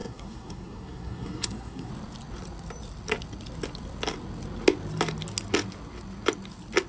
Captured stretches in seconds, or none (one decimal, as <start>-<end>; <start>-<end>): 1.9-6.9